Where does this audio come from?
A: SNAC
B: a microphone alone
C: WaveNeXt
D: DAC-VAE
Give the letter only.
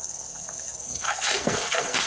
A